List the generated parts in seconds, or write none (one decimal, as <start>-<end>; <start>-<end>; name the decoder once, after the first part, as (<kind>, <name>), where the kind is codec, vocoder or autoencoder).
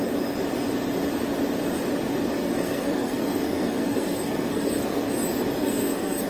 2.4-5.1 (codec, SNAC); 5.6-6.3